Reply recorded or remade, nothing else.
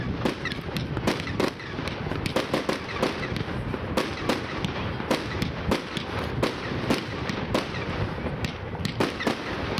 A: recorded